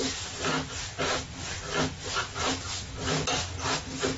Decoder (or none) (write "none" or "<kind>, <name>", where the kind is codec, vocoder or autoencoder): none